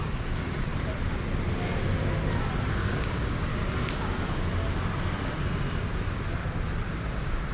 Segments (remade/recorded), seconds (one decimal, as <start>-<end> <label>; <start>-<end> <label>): 0.0-0.7 remade; 0.7-2.7 recorded; 2.7-3.5 remade; 3.5-7.5 recorded